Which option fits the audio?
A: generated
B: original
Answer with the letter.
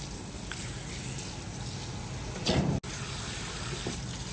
B